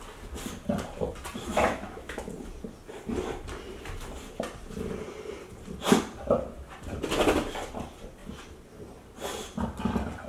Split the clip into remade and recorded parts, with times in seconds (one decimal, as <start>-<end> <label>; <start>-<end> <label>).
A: 0.0-1.5 recorded; 1.5-2.3 remade; 2.3-10.3 recorded